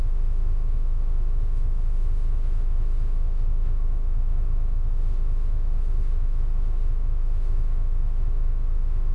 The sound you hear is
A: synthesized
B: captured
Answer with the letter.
A